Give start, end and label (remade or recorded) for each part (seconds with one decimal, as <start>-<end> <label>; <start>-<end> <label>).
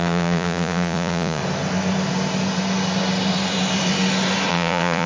0.0-1.4 remade; 1.4-4.5 recorded; 4.5-5.1 remade